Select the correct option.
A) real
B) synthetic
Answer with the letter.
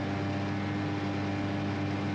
A